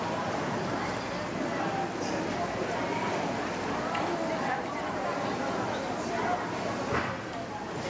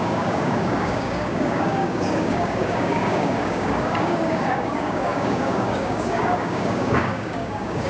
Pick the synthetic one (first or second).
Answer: second